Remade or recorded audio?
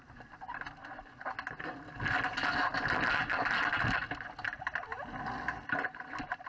recorded